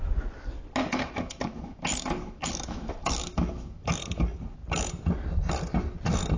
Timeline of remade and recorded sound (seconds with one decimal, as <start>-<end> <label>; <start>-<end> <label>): 0.0-0.8 recorded; 0.8-4.0 remade; 4.0-6.4 recorded